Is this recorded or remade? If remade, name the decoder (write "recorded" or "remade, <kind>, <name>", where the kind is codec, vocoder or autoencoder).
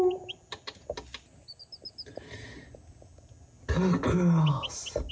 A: recorded